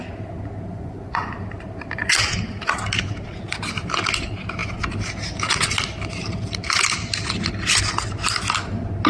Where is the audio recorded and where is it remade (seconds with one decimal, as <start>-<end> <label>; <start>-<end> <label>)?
0.0-0.7 recorded; 0.7-1.3 remade; 1.3-9.1 recorded